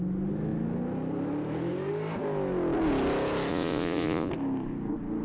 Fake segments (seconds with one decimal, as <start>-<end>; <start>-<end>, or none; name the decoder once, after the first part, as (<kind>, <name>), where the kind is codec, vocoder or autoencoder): 3.5-4.3 (vocoder, Vocos)